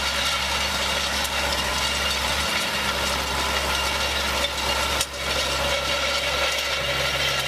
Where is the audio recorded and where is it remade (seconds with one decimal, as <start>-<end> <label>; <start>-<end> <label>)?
0.0-0.7 recorded; 0.7-1.7 remade; 1.7-7.5 recorded